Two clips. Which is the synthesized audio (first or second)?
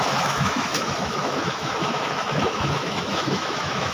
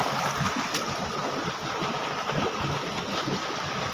first